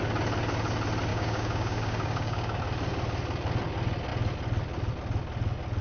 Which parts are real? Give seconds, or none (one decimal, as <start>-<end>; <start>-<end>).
0.0-1.1; 2.6-5.8

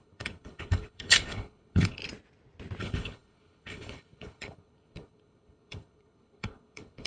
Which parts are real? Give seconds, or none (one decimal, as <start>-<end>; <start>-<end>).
2.0-2.8

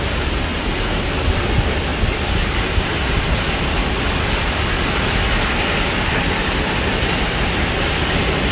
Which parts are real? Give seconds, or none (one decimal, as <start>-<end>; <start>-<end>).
0.0-8.5

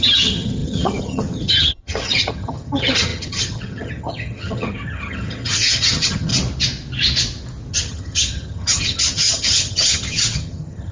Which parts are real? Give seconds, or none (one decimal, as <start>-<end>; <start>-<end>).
6.3-7.7

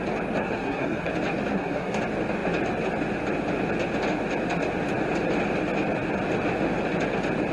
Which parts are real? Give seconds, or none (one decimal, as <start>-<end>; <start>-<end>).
0.0-0.4; 1.1-1.5; 2.0-7.5